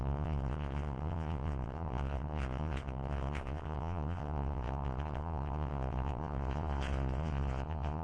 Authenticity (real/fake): fake